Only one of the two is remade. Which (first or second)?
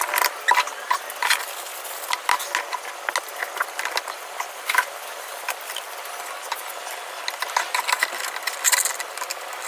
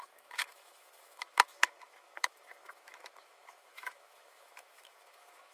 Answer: second